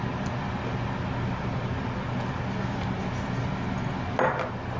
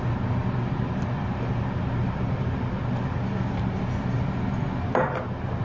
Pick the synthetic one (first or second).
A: second